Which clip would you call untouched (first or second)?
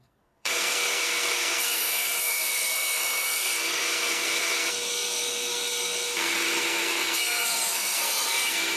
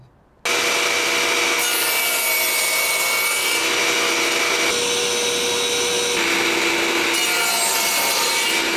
second